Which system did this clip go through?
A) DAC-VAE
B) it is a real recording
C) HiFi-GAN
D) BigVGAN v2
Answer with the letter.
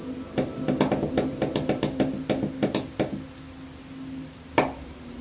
B